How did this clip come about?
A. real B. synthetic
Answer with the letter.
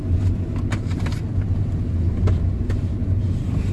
A